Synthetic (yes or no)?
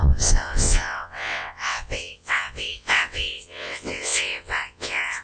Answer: yes